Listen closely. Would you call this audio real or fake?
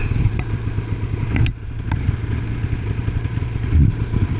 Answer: real